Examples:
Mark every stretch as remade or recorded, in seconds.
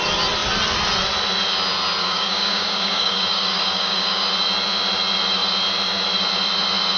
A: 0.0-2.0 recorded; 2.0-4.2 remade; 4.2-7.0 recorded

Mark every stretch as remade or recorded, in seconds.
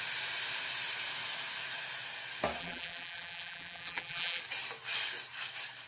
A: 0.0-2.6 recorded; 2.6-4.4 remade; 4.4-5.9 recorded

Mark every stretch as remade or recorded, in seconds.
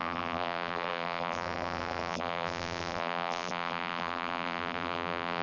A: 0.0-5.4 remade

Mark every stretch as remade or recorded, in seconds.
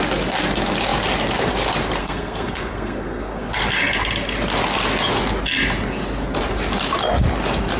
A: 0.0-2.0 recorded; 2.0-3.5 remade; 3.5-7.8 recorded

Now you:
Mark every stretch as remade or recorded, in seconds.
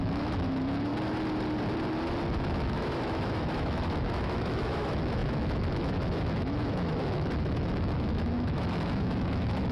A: 0.0-0.9 remade; 0.9-2.4 recorded; 2.4-9.7 remade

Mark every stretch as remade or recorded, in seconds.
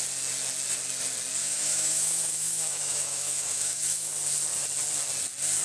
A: 0.0-1.4 recorded; 1.4-4.1 remade; 4.1-5.6 recorded